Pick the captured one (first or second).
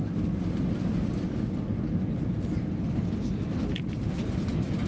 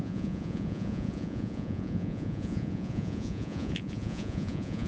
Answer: first